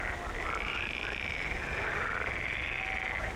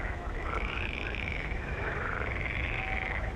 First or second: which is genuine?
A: first